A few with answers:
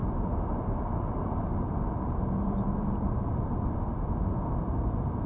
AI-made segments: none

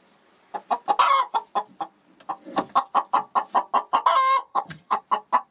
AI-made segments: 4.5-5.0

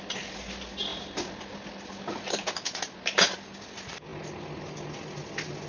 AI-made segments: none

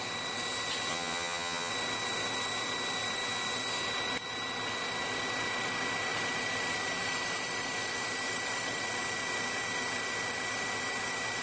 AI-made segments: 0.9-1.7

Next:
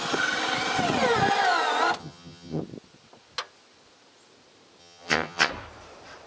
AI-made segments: 2.0-2.6; 4.8-5.5

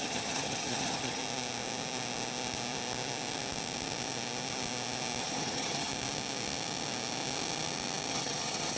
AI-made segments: 0.0-1.2; 5.2-5.9; 8.1-8.8

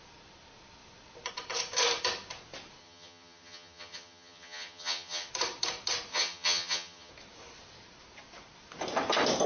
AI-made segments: 2.8-5.3; 6.1-7.1

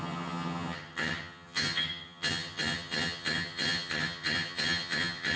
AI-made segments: 0.0-5.4